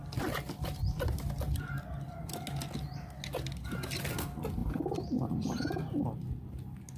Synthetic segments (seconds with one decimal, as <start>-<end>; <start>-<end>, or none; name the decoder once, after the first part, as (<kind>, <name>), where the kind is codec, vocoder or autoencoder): 0.0-2.1 (vocoder, BigVGAN v2); 4.6-6.0